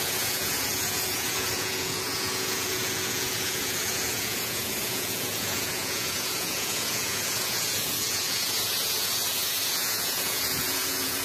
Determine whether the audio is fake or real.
fake